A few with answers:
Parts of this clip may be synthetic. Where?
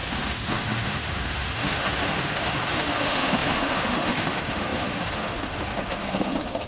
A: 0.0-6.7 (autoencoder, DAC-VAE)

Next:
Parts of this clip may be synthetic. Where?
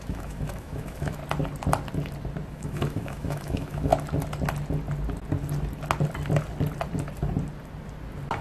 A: 0.0-1.2 (autoencoder, DAC-VAE); 2.5-3.9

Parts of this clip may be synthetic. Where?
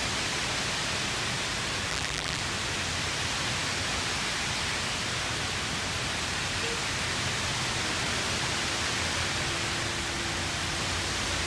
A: 1.9-2.4 (vocoder, BigVGAN v2)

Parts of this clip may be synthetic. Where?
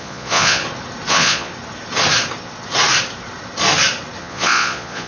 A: 0.0-0.6 (vocoder, Vocos); 1.1-1.5; 4.2-5.1